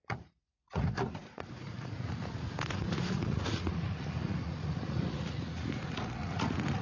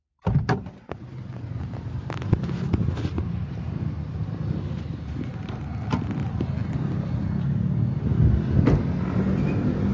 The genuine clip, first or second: second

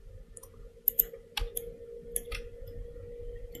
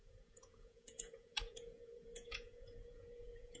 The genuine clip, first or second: first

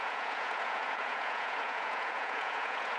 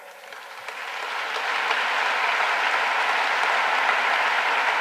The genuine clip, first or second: second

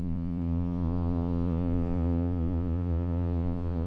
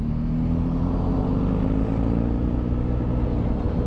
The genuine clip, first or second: second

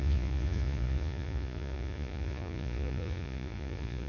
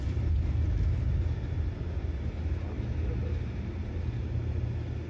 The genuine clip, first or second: second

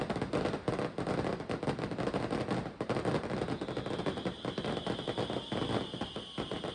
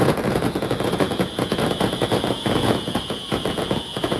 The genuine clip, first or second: first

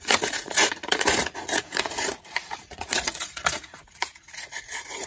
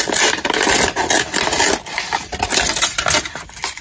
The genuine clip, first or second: second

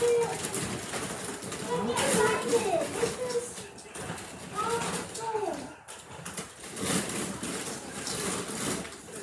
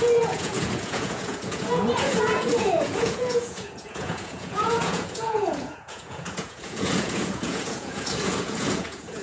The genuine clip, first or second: first